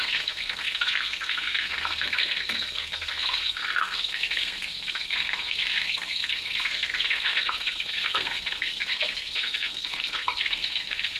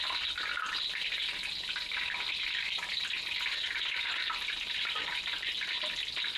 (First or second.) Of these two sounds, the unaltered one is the second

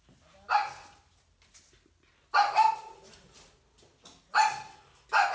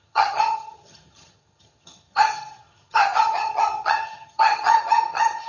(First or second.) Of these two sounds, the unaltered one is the first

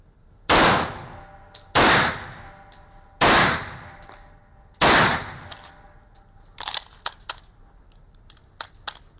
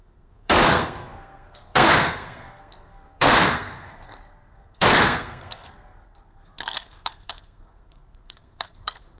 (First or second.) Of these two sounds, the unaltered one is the first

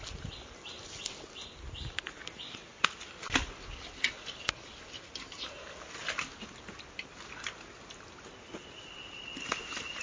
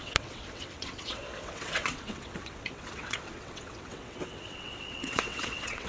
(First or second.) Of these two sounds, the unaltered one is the first